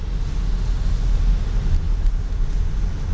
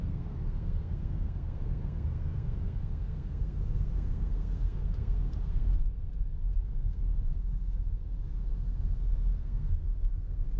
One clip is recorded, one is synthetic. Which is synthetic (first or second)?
second